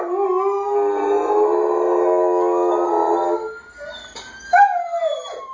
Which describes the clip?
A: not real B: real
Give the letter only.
B